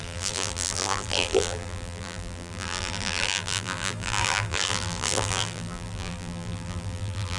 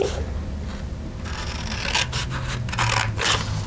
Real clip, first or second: second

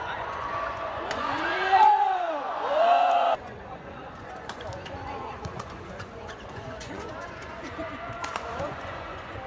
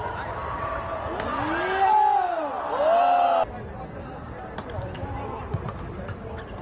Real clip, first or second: second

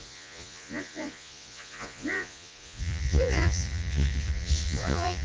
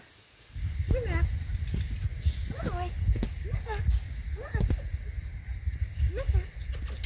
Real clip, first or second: second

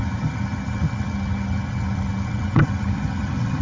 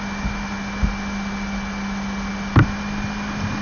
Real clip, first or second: second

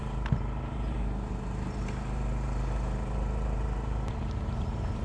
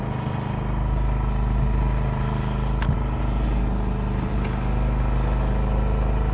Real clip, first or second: second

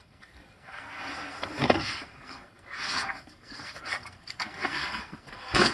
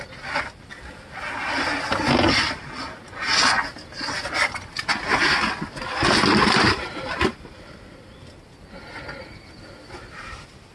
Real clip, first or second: second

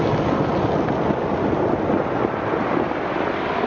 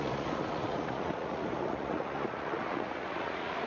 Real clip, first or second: first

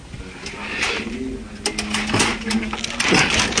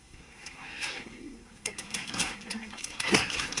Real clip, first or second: first